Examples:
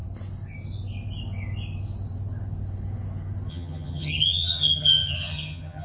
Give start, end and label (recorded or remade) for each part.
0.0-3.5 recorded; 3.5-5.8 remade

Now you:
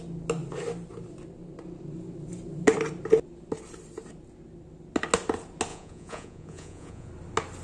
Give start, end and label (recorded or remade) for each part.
0.0-5.7 recorded; 5.7-7.1 remade; 7.1-7.6 recorded